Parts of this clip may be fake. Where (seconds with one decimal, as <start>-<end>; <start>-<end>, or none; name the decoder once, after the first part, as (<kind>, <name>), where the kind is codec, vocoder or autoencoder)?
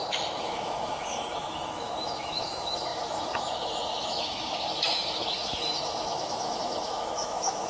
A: 0.0-7.7 (autoencoder, DAC-VAE)